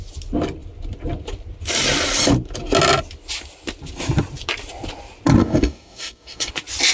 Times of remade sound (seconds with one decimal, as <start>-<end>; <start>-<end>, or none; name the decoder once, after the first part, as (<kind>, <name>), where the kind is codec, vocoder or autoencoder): 5.4-6.5 (codec, DAC)